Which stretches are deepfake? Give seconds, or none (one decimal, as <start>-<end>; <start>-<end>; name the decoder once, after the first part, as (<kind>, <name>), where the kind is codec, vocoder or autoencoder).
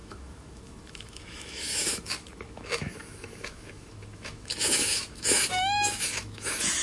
0.0-6.8 (autoencoder, DAC-VAE)